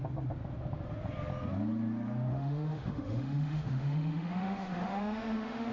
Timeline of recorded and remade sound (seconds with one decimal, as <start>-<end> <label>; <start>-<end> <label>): 0.0-2.3 recorded; 2.3-5.7 remade